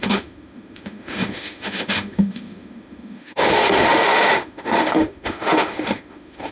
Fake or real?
fake